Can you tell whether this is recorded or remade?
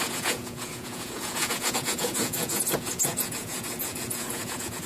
remade